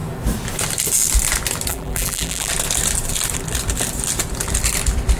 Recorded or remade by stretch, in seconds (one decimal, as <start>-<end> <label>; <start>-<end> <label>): 0.0-1.7 recorded; 1.7-2.5 remade; 2.5-5.2 recorded

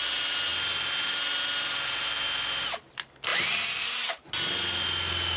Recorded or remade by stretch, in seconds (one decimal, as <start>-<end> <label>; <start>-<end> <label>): 0.0-3.3 recorded; 3.3-4.3 remade; 4.3-5.4 recorded

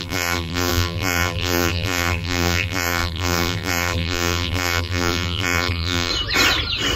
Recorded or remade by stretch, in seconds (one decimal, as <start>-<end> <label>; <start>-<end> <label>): 0.0-6.1 remade; 6.1-7.0 recorded

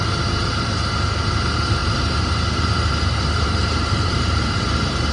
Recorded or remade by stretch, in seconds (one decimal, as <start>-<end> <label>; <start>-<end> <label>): 0.0-1.8 recorded; 1.8-5.1 remade

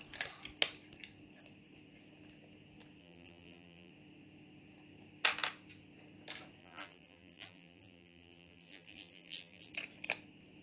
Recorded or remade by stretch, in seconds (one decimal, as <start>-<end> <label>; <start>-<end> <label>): 0.0-3.0 recorded; 3.0-3.9 remade; 3.9-6.6 recorded; 6.6-9.7 remade; 9.7-10.6 recorded

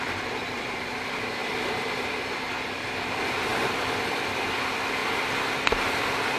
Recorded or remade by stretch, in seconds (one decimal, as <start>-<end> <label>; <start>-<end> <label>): 0.0-5.0 remade; 5.0-6.0 recorded; 6.0-6.4 remade

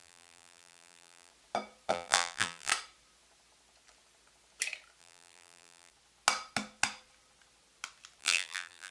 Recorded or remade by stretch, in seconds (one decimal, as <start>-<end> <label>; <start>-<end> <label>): 0.0-1.3 remade; 1.3-1.9 recorded; 1.9-2.7 remade; 2.7-5.0 recorded; 5.0-5.9 remade; 5.9-8.2 recorded; 8.2-8.9 remade